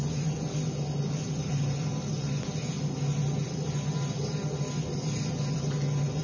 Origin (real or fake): real